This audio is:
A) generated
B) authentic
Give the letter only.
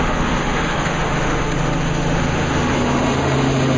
A